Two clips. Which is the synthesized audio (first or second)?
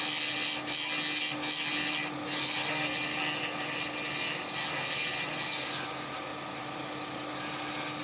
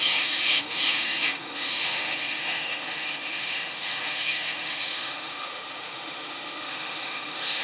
second